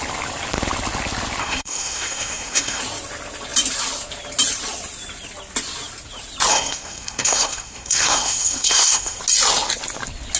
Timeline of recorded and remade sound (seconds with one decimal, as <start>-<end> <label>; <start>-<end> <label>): 0.0-1.4 recorded; 1.4-2.8 remade; 2.8-6.5 recorded; 6.5-9.2 remade; 9.2-10.4 recorded